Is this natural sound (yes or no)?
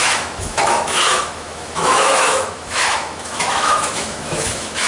no